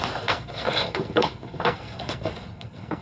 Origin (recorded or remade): remade